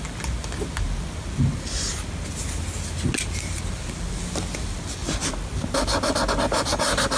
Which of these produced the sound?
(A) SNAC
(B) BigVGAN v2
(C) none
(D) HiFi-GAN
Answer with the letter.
C